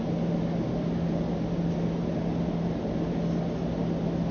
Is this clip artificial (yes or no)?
no